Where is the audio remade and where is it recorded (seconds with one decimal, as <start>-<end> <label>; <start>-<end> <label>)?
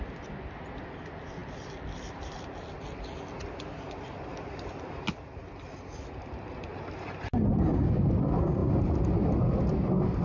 0.0-10.2 recorded